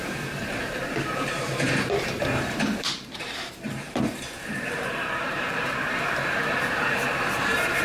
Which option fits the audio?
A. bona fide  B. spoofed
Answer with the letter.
B